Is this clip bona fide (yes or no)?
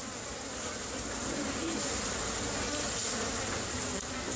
yes